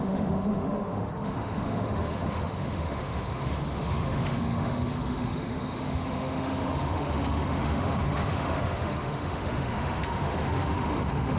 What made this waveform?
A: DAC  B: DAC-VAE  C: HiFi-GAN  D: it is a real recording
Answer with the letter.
B